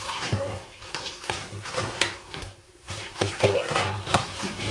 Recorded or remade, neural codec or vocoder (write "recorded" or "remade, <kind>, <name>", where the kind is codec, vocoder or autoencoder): remade, codec, SNAC